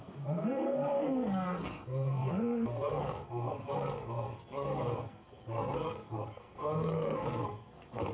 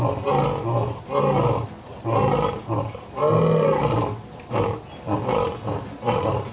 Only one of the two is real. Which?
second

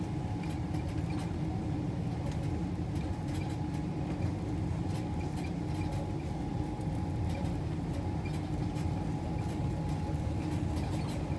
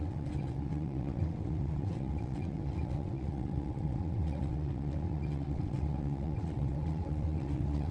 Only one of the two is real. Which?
first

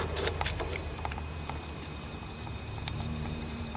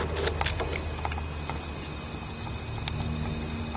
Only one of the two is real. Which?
second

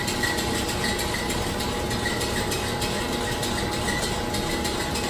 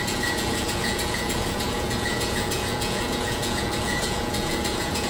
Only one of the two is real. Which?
first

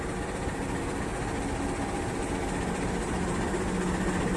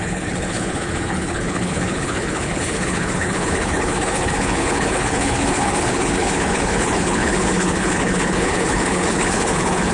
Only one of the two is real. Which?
first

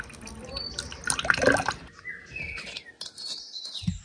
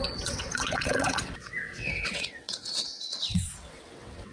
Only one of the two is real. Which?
first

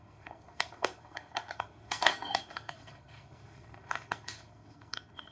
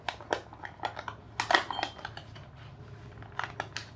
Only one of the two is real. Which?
second